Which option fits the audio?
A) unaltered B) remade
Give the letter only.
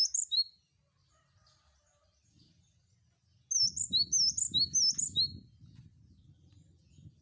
A